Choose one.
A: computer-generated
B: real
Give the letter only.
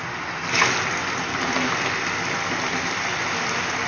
B